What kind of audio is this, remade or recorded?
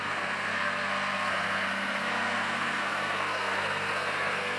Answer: remade